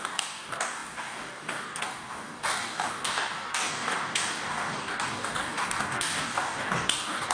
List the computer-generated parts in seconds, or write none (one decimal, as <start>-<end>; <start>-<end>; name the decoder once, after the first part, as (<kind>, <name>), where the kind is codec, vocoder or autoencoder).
0.0-7.3 (codec, DAC)